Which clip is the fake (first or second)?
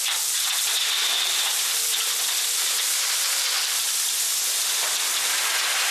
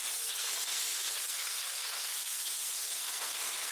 second